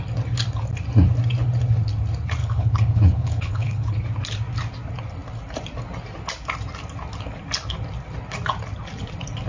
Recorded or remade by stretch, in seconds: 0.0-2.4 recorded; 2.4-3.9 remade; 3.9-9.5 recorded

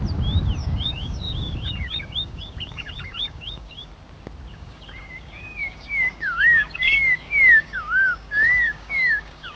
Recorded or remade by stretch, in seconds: 0.0-0.6 recorded; 0.6-3.9 remade; 3.9-4.5 recorded; 4.5-9.6 remade

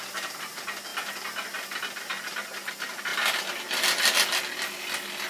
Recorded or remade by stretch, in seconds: 0.0-5.3 recorded

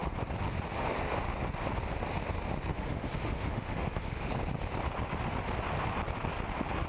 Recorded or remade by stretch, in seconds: 0.0-2.7 recorded; 2.7-4.3 remade; 4.3-6.9 recorded

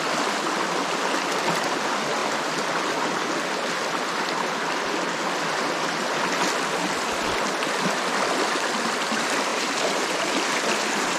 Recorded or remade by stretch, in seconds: 0.0-9.5 recorded; 9.5-10.6 remade; 10.6-11.2 recorded

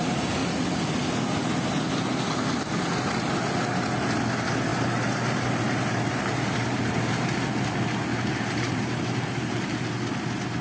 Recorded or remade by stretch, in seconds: 0.0-4.7 recorded; 4.7-6.9 remade; 6.9-8.1 recorded; 8.1-9.7 remade; 9.7-10.6 recorded